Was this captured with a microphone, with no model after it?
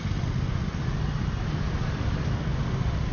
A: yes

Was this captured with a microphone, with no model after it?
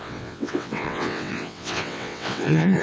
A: no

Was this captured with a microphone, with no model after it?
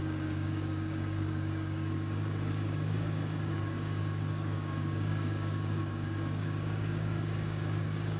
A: no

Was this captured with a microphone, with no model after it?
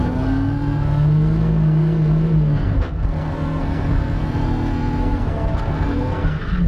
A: no